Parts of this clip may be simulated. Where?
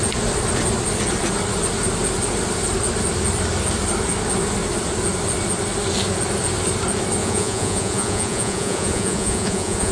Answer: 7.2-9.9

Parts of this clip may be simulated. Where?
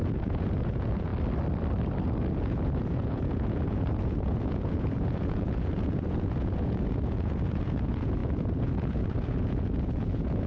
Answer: 0.0-1.1; 2.4-10.5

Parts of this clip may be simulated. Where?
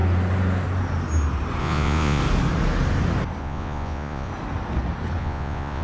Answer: 1.6-2.2; 3.4-4.3; 5.2-5.8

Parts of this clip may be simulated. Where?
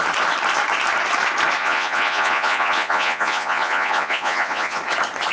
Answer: 1.6-4.8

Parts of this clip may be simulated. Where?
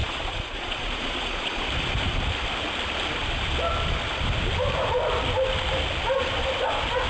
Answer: 0.0-1.6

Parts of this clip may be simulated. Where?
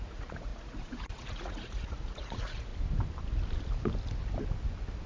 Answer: 0.0-2.7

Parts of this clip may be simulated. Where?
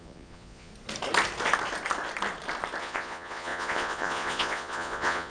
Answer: 0.0-0.7; 2.8-5.3